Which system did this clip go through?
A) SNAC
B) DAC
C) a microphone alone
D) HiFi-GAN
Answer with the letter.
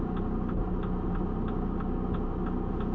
C